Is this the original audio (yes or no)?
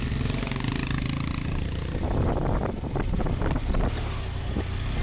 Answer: yes